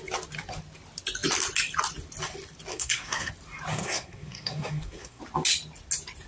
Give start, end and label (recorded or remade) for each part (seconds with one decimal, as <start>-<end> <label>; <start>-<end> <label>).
0.0-2.7 recorded; 2.7-3.3 remade; 3.3-3.7 recorded; 3.7-5.2 remade; 5.2-6.3 recorded